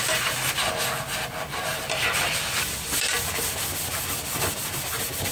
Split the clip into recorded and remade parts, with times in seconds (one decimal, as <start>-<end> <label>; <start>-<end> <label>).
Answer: 0.0-5.3 remade